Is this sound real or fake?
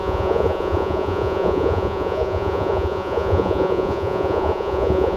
fake